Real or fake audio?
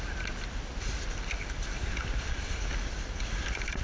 real